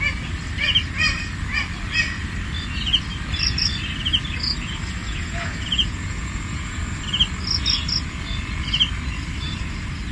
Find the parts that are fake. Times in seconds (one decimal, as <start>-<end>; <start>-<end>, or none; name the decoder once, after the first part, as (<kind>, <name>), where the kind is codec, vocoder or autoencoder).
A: 5.0-6.8 (vocoder, Vocos)